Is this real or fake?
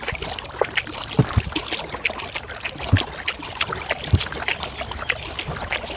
real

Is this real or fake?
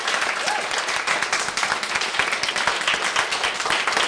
real